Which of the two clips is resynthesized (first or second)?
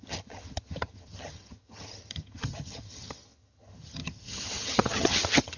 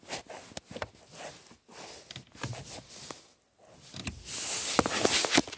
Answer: first